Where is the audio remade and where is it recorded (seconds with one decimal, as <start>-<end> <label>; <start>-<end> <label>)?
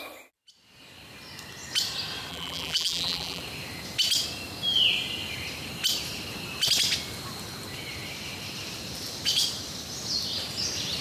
0.0-2.3 recorded; 2.3-3.4 remade; 3.4-11.0 recorded